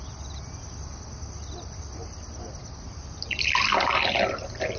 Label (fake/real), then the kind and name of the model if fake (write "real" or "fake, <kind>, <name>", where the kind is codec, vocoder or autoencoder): real